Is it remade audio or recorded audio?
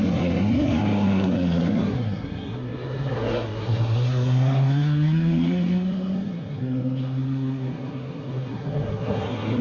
remade